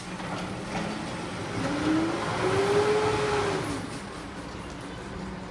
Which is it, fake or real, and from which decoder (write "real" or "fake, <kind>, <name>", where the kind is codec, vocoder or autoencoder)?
real